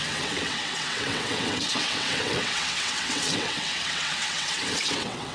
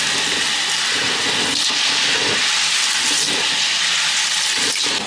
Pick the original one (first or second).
second